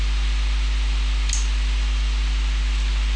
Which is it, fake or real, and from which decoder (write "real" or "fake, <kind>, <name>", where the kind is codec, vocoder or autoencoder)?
real